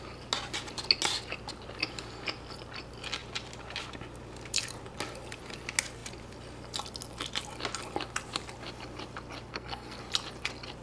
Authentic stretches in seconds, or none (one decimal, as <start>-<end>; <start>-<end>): 0.0-9.5; 10.0-10.8